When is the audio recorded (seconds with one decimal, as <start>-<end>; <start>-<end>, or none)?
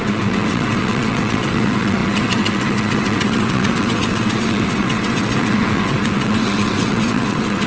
none